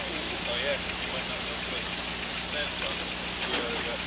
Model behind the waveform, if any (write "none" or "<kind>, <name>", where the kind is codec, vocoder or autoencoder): none